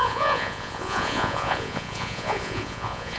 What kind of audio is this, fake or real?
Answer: fake